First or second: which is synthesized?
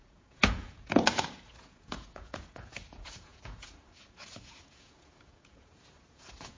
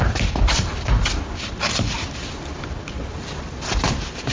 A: first